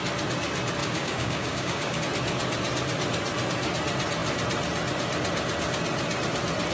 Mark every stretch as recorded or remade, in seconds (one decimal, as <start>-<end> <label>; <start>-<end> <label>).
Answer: 0.0-0.8 recorded; 0.8-2.0 remade; 2.0-6.7 recorded